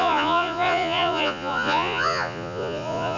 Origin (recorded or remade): remade